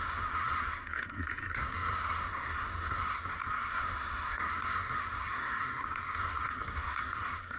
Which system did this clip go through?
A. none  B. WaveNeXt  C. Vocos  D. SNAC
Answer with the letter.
D